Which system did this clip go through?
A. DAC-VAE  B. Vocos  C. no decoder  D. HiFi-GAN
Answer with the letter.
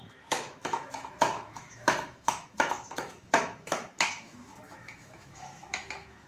A